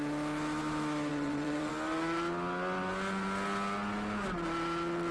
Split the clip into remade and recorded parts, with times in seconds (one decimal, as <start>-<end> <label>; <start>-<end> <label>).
0.0-1.1 recorded; 1.1-1.7 remade; 1.7-5.1 recorded